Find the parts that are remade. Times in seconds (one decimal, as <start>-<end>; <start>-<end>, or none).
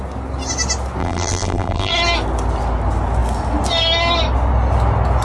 1.0-1.9